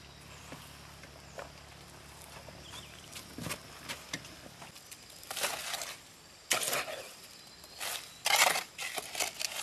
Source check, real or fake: real